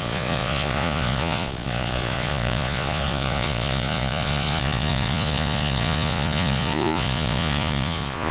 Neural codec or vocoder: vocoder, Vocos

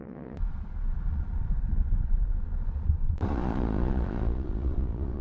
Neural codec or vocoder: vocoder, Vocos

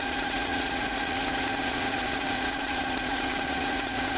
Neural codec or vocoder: vocoder, Vocos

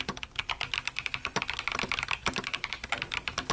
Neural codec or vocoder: none